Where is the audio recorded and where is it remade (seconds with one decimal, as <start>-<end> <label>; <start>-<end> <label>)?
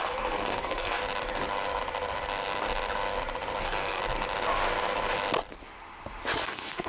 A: 0.0-1.0 remade; 1.0-3.6 recorded; 3.6-4.0 remade; 4.0-6.4 recorded; 6.4-6.9 remade